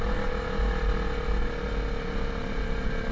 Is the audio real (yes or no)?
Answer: yes